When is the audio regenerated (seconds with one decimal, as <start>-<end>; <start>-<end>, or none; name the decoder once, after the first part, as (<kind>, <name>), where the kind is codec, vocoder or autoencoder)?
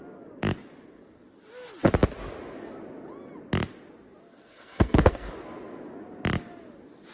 4.3-5.3 (codec, SNAC)